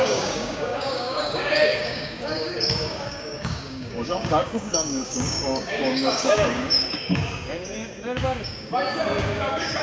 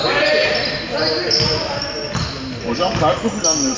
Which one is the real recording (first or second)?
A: second